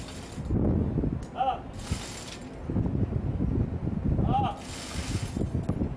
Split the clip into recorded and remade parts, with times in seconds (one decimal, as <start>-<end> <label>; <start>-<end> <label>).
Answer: 0.0-6.0 recorded